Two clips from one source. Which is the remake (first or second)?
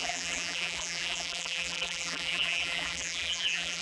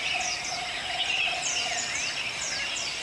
first